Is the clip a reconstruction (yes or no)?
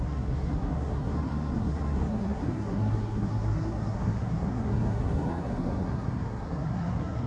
yes